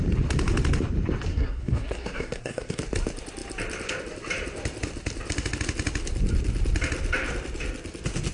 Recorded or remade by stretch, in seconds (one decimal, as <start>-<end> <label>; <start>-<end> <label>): 0.0-1.3 recorded; 1.3-2.8 remade; 2.8-8.3 recorded